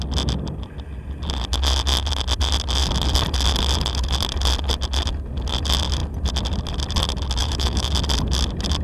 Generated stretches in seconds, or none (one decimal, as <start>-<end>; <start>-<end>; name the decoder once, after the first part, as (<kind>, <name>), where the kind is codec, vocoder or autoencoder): 7.4-7.9 (autoencoder, DAC-VAE)

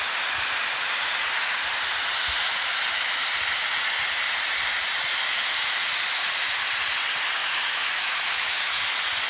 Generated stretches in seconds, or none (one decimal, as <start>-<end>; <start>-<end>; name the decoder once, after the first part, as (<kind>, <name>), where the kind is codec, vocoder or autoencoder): 7.4-8.9 (autoencoder, DAC-VAE)